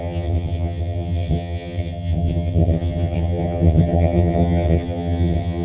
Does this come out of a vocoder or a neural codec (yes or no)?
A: yes